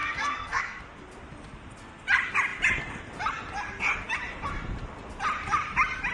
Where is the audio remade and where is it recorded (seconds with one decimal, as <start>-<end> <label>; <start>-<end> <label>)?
0.0-0.8 remade; 0.8-6.1 recorded